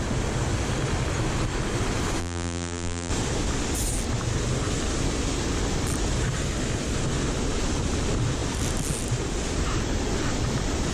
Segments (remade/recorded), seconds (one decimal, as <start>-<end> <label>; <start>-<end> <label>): 0.0-2.2 recorded; 2.2-3.1 remade; 3.1-10.9 recorded